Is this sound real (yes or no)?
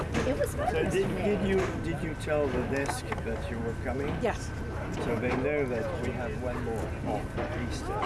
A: yes